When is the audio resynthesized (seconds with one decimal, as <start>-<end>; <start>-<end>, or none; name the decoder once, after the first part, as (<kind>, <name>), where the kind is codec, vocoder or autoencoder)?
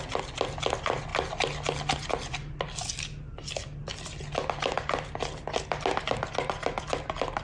3.6-4.2 (vocoder, BigVGAN v2)